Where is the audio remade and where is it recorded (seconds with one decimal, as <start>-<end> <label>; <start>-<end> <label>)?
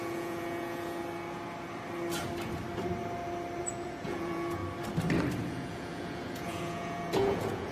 0.0-1.0 remade; 1.0-3.6 recorded; 3.6-4.6 remade; 4.6-5.4 recorded; 5.4-7.7 remade